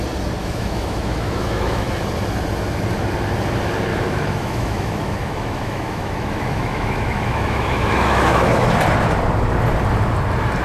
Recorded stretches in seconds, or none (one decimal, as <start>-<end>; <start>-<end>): 0.0-0.4; 2.0-3.9; 8.7-10.6

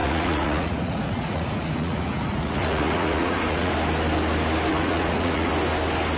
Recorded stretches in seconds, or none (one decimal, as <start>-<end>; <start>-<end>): 3.7-4.7; 5.5-6.2

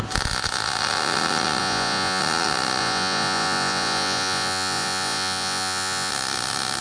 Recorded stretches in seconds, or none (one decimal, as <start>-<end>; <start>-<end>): 0.0-1.6; 2.2-2.8; 6.1-6.8

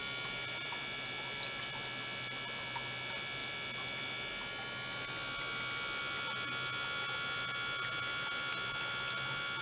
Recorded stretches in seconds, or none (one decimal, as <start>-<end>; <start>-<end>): 0.0-9.6

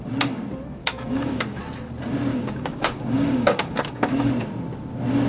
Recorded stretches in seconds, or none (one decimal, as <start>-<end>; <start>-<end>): 0.0-0.8; 1.6-2.3; 4.3-5.3